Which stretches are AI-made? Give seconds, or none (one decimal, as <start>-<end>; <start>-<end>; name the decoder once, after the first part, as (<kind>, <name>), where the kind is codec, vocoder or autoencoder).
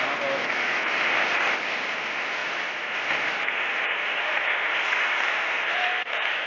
2.4-2.9 (vocoder, BigVGAN v2)